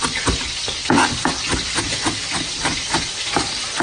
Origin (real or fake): real